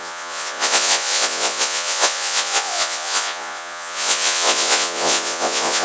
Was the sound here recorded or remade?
remade